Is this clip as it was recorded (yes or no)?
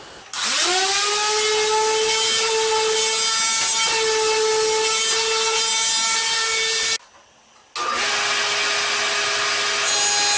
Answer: yes